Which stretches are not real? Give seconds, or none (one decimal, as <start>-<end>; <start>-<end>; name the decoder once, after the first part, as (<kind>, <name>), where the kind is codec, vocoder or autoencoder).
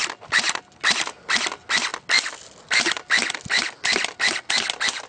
none